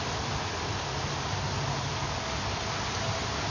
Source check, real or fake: real